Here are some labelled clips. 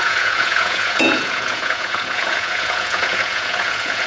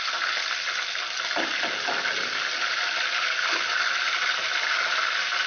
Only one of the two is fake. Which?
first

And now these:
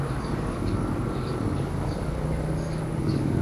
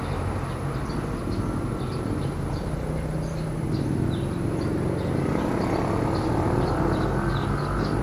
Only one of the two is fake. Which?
first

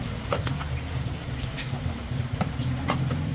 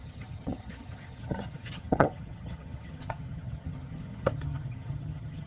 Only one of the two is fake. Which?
second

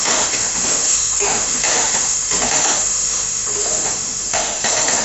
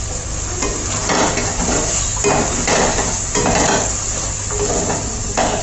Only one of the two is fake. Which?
first